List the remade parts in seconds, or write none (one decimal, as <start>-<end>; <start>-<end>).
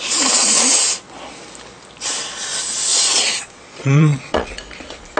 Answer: 2.9-4.5